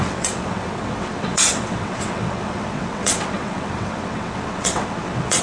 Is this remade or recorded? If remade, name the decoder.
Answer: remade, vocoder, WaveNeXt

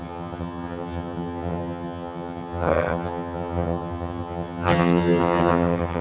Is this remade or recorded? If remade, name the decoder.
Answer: remade, vocoder, HiFi-GAN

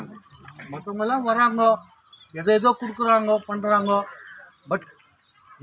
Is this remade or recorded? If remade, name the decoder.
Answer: recorded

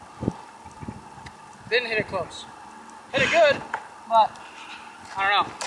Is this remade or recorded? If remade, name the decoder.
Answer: recorded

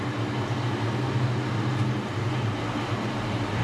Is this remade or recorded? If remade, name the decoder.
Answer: recorded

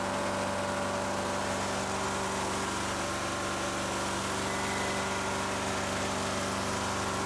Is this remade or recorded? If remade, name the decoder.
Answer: recorded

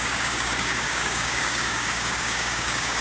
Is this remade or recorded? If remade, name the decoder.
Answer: remade, codec, DAC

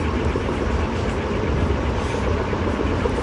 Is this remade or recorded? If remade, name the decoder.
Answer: recorded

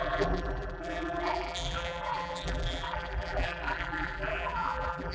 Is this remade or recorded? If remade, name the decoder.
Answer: remade, vocoder, BigVGAN v2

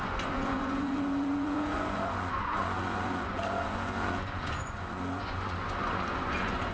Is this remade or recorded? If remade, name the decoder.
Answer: remade, vocoder, Vocos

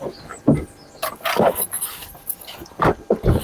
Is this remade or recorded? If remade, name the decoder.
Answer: recorded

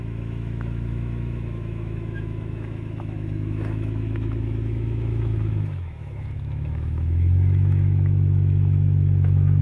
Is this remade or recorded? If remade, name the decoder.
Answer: remade, autoencoder, DAC-VAE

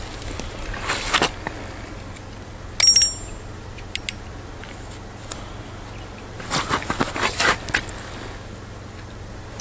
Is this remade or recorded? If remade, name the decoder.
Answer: recorded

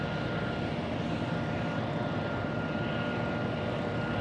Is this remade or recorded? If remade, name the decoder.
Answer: recorded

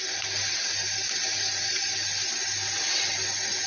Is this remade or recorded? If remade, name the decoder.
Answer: recorded